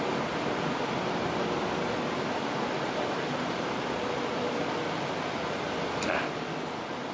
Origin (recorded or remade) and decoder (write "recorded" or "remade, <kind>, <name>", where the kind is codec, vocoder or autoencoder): recorded